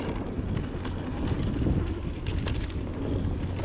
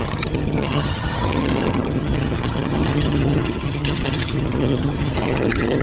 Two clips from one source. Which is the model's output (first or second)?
second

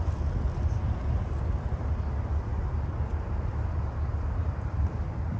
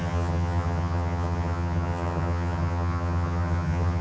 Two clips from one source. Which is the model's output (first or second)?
second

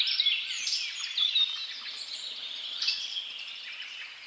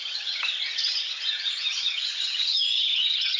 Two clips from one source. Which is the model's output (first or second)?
second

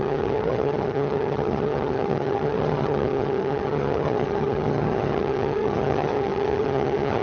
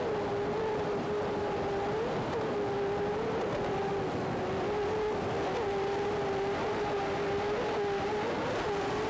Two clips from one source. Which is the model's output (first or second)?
first